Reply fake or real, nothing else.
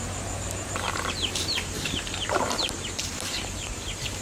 fake